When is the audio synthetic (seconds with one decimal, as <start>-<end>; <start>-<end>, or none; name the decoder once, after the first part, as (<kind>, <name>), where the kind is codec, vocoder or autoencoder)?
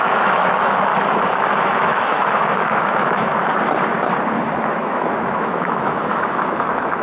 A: 0.0-0.9 (autoencoder, DAC-VAE); 1.8-3.3; 4.7-7.0